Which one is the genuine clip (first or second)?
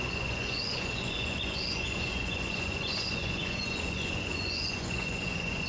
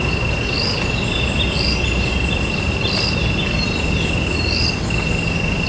second